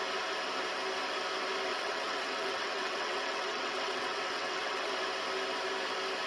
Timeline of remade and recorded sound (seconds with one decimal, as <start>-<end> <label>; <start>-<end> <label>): 0.0-1.7 recorded; 1.7-4.9 remade; 4.9-6.3 recorded